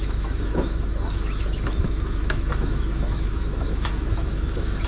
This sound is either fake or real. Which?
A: fake